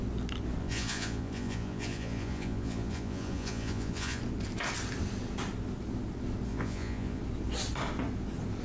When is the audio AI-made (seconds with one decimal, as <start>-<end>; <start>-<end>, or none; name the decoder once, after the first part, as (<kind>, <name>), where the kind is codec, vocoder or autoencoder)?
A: 0.6-4.2 (vocoder, Vocos); 6.5-7.2